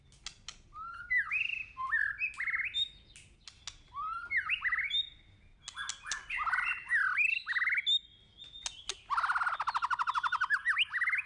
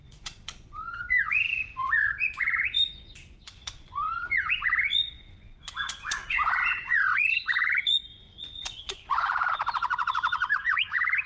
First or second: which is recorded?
first